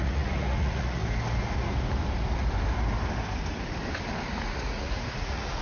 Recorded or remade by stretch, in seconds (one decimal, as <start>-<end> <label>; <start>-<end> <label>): 0.0-1.0 remade; 1.0-4.4 recorded; 4.4-5.6 remade